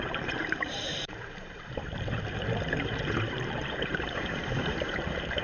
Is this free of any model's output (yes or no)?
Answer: no